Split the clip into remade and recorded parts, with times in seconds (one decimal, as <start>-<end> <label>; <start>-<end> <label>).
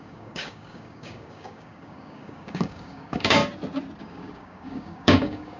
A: 0.0-3.4 remade; 3.4-4.0 recorded; 4.0-5.6 remade